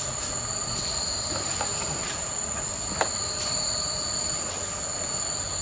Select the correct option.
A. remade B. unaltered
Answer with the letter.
B